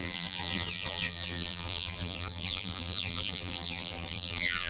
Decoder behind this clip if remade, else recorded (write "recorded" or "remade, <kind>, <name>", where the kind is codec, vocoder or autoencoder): remade, vocoder, BigVGAN v2